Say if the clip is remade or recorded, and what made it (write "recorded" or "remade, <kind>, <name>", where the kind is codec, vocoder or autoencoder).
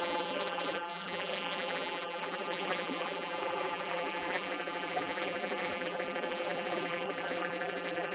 remade, vocoder, BigVGAN v2